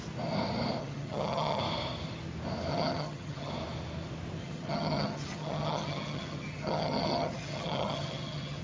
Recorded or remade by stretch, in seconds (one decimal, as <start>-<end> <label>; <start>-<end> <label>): 0.0-0.8 recorded; 0.8-1.6 remade; 1.6-2.7 recorded; 2.7-3.5 remade; 3.5-4.4 recorded; 4.4-8.6 remade